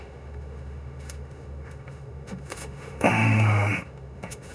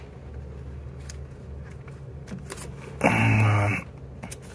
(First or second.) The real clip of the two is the second